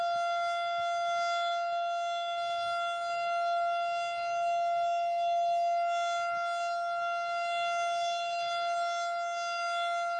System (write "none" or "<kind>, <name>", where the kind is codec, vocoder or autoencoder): none